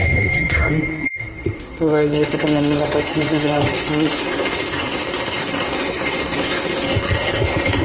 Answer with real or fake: fake